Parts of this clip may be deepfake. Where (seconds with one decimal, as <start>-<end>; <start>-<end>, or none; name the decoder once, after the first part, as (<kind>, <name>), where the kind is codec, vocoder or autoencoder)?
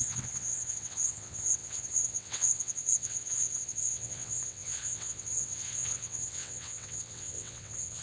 0.0-8.0 (vocoder, WaveNeXt)